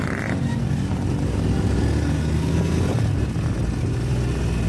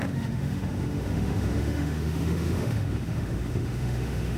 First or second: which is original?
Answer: first